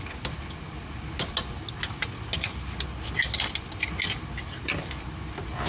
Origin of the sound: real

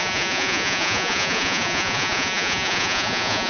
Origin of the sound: fake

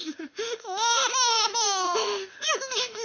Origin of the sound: fake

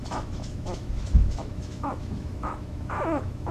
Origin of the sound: fake